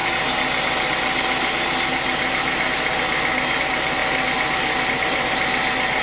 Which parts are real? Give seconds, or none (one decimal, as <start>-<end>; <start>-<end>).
0.0-6.0